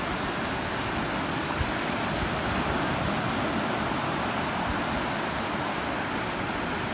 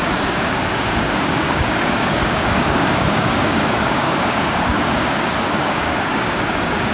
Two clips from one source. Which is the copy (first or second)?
second